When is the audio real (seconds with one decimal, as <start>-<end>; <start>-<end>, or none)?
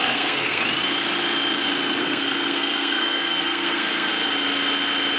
0.6-2.0; 4.1-5.2